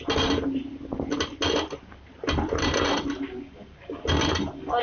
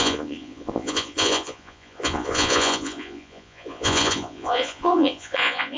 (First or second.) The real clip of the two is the first